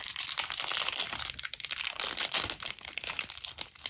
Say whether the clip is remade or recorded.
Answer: recorded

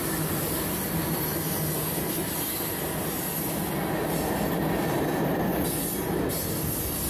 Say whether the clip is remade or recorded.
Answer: recorded